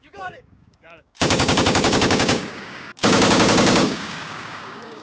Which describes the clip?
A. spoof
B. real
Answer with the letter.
A